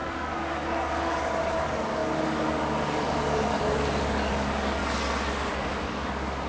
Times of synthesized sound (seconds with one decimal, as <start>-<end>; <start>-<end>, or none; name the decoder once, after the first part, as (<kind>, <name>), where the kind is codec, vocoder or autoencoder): 0.0-4.8 (codec, DAC); 5.5-6.5